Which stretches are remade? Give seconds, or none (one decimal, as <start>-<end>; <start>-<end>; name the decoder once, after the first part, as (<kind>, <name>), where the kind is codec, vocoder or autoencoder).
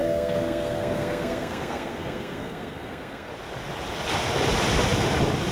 0.0-3.3 (codec, SNAC)